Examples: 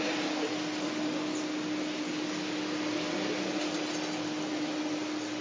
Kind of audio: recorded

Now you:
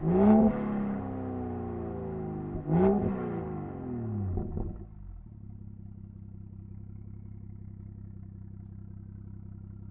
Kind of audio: recorded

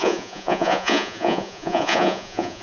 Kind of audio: remade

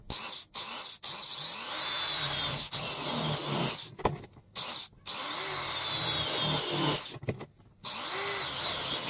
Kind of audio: recorded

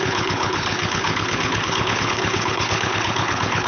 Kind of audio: remade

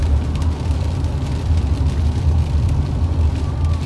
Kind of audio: recorded